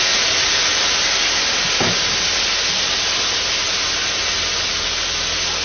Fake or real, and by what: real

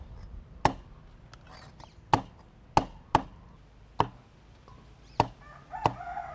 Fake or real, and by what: real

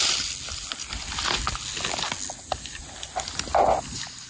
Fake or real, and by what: real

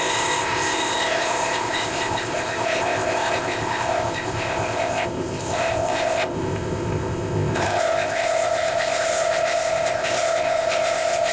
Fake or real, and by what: fake, codec, ZipCodec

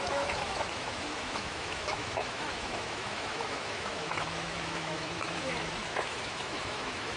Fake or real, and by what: fake, autoencoder, DAC-VAE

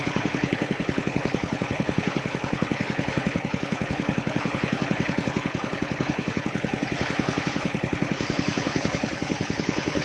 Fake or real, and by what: fake, codec, HILCodec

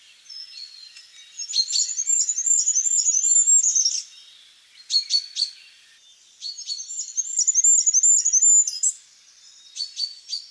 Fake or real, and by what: real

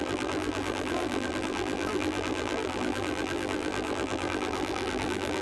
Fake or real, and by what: fake, vocoder, BigVGAN v2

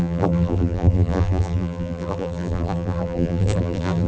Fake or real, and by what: fake, vocoder, BigVGAN v2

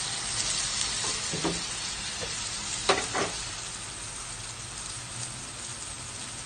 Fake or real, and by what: real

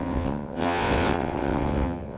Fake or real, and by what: fake, vocoder, WaveNeXt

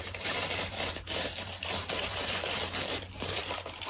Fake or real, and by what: fake, vocoder, BigVGAN v2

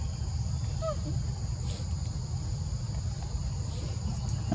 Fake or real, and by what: real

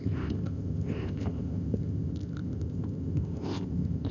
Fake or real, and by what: fake, codec, ZipCodec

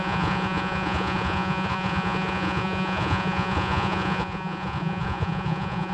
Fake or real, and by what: fake, vocoder, Vocos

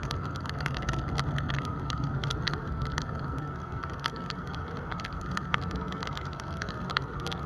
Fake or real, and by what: fake, codec, SNAC